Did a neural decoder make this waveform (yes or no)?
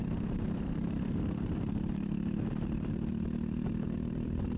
yes